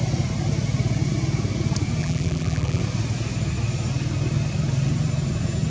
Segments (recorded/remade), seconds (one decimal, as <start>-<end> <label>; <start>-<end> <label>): 0.0-2.0 recorded; 2.0-2.8 remade; 2.8-5.7 recorded